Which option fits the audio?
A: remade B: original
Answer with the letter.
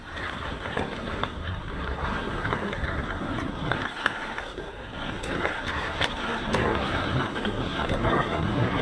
A